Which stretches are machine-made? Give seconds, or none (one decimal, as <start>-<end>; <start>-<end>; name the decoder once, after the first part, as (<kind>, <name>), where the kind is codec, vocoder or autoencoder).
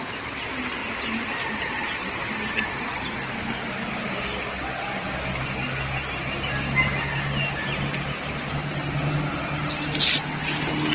none